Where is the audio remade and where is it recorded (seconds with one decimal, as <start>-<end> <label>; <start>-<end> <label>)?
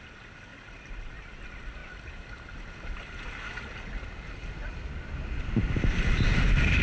0.0-6.8 recorded